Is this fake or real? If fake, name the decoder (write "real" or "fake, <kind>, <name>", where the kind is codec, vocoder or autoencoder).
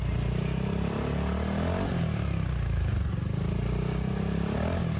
real